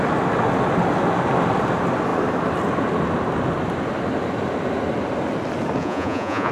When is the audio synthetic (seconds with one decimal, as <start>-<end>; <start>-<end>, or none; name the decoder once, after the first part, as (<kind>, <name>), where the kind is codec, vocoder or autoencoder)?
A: 5.8-6.5 (vocoder, Vocos)